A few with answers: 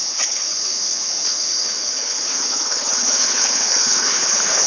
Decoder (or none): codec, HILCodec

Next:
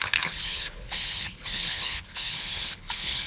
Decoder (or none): codec, HILCodec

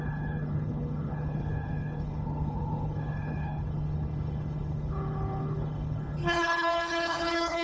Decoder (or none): codec, HILCodec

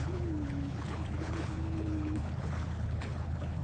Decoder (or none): codec, HILCodec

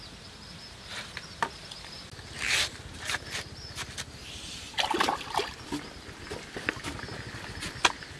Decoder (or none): none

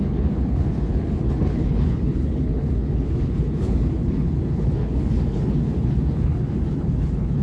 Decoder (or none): codec, HILCodec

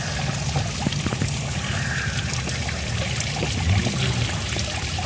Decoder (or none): none